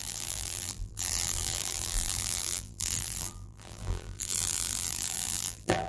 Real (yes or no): no